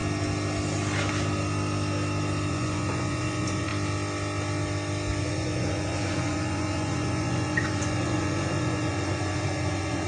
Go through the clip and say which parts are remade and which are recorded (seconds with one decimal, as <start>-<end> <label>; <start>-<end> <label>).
0.0-2.5 recorded; 2.5-3.7 remade; 3.7-5.2 recorded; 5.2-10.1 remade